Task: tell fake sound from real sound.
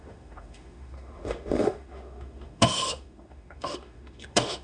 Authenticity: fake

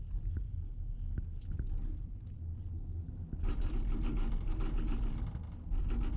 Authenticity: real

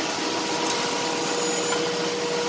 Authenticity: real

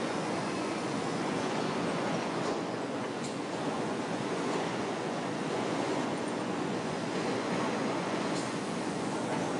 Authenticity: fake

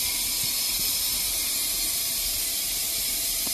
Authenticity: fake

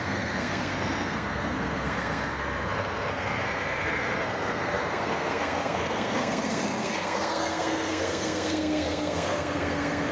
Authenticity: fake